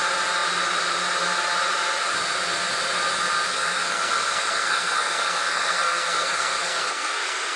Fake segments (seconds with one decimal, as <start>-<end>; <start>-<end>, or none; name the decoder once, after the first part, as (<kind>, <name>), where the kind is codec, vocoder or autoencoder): 3.5-7.6 (codec, SNAC)